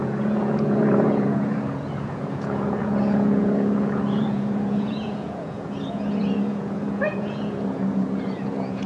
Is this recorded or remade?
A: remade